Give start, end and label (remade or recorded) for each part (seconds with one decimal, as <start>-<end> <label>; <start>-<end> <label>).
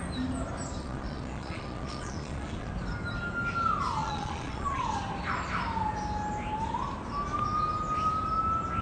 0.0-0.8 recorded; 0.8-2.7 remade; 2.7-4.0 recorded; 4.0-4.8 remade; 4.8-8.8 recorded